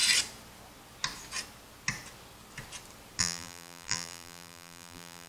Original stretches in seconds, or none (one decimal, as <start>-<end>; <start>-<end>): 0.0-3.2